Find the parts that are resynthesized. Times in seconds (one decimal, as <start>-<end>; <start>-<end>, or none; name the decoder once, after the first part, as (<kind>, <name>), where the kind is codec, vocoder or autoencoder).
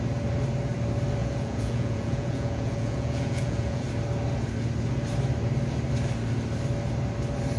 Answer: 1.2-3.8 (vocoder, Vocos)